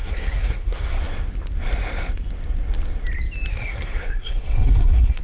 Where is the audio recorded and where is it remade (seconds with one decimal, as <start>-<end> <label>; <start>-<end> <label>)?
0.0-1.0 remade; 1.0-3.5 recorded; 3.5-5.2 remade